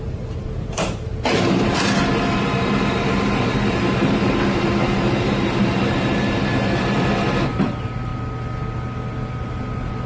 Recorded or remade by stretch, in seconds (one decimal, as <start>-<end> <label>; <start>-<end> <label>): 0.0-8.1 remade; 8.1-9.4 recorded; 9.4-10.1 remade